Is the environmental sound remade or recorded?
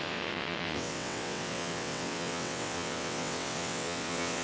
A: remade